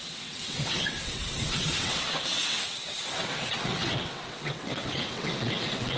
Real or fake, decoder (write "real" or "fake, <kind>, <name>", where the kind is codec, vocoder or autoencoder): fake, vocoder, WaveNeXt